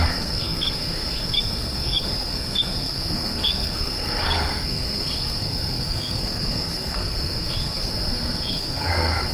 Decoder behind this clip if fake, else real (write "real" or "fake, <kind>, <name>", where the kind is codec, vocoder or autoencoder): fake, codec, SNAC